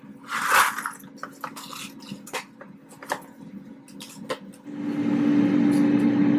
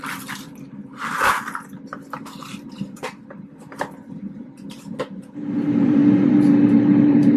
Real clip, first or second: first